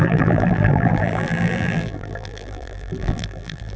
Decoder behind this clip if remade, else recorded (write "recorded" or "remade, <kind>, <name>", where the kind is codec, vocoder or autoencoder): remade, vocoder, BigVGAN v2